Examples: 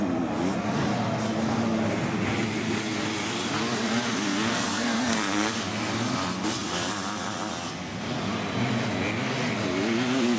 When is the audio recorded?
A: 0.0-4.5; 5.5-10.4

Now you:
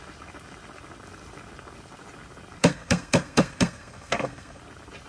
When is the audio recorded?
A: 0.0-2.6; 4.6-5.1

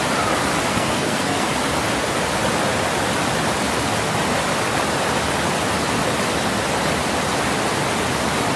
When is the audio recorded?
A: 0.0-0.7; 1.5-8.6

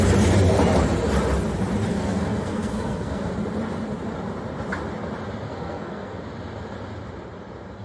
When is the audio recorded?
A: 0.0-1.9; 3.3-5.5; 6.2-7.8

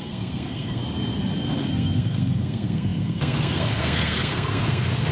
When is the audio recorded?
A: 0.8-1.7

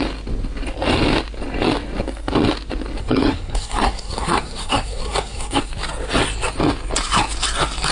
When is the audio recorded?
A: 0.0-3.0; 5.7-7.9

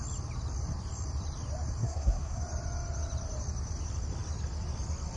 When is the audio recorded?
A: 0.0-1.8; 2.4-5.2